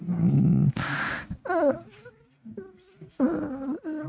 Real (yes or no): yes